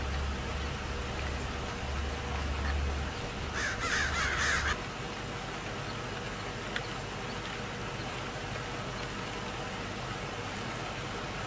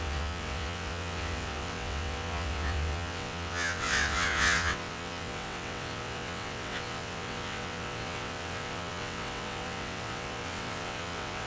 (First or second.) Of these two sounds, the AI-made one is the second